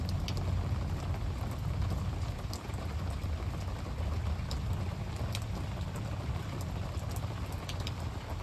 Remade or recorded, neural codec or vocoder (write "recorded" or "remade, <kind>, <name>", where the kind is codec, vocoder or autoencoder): recorded